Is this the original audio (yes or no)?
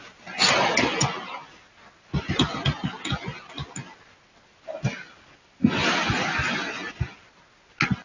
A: yes